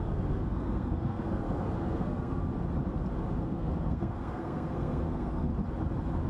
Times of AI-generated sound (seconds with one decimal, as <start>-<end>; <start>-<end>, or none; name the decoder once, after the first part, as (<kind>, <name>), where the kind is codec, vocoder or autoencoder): 0.0-2.4 (codec, SNAC); 3.4-5.5